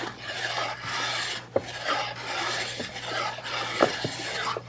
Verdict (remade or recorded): recorded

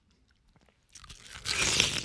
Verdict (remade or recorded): recorded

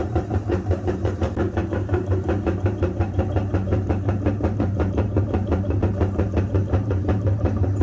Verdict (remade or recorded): remade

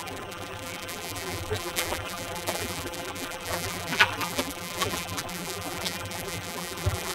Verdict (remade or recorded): remade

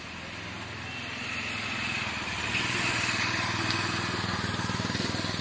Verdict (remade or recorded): recorded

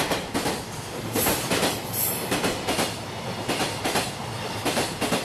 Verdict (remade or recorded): remade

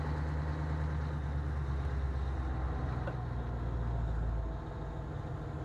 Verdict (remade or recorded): recorded